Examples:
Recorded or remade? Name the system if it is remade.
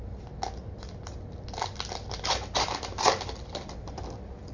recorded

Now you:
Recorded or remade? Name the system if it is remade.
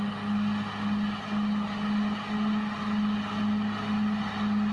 recorded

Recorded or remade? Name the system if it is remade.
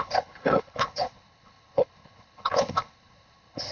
remade, codec, HILCodec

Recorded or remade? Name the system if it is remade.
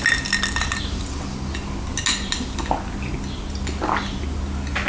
recorded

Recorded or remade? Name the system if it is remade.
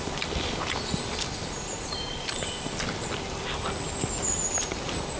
recorded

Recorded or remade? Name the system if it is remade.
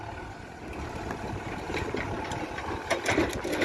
recorded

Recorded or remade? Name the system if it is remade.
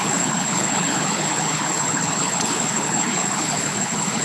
remade, codec, HILCodec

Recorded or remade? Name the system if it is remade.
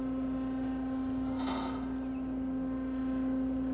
recorded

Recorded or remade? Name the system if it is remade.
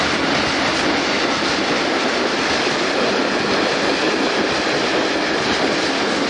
recorded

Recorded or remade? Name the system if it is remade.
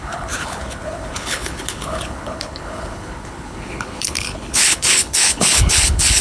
remade, codec, HILCodec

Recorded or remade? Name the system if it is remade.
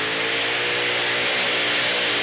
recorded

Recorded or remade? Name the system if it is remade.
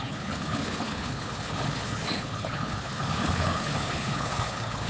remade, codec, HILCodec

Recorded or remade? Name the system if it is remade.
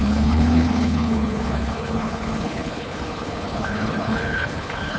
remade, codec, HILCodec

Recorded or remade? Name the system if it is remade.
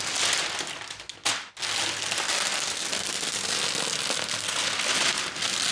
recorded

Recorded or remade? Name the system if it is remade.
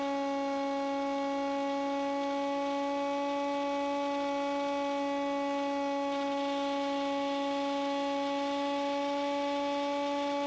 recorded